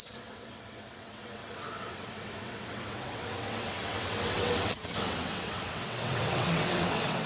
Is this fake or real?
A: fake